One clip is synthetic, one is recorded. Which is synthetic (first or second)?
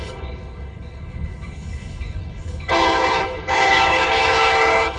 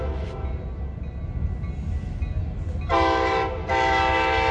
first